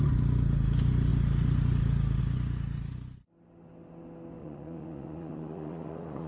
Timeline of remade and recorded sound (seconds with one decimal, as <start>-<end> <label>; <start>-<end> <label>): 0.0-4.4 recorded; 4.4-6.3 remade